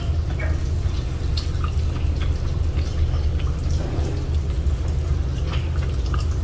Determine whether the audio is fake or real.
real